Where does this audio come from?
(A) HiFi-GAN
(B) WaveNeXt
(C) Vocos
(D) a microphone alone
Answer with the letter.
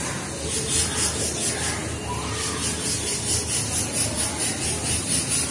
D